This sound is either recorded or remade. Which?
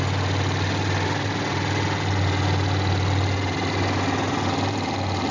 recorded